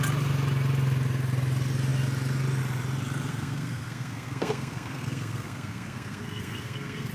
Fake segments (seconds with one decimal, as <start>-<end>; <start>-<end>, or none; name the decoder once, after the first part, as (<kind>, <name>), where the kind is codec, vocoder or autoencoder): 3.3-7.1 (codec, SNAC)